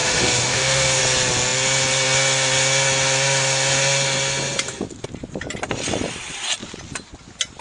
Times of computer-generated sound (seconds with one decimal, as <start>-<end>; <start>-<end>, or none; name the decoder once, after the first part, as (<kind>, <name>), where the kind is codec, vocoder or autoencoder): 0.0-1.0 (autoencoder, DAC-VAE)